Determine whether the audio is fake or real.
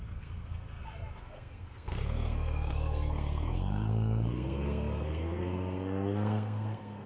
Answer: fake